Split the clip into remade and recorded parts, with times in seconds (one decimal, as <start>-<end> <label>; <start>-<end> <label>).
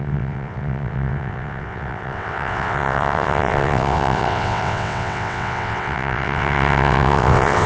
0.0-7.7 remade